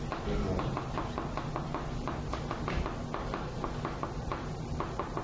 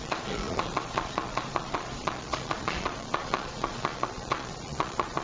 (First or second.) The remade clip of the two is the second